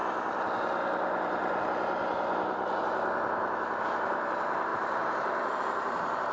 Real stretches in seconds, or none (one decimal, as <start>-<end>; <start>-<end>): 0.0-3.8